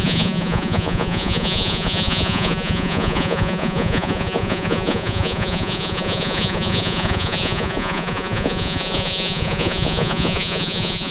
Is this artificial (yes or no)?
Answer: yes